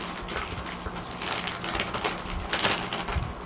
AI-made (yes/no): no